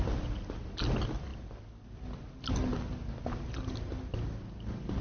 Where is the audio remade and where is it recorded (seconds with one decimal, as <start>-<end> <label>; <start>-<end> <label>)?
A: 0.0-5.0 recorded